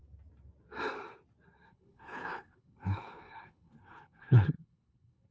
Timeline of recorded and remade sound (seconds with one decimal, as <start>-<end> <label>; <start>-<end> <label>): 0.0-1.7 recorded; 1.7-5.3 remade